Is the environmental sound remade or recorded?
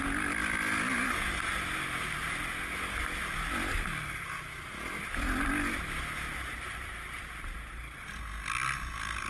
recorded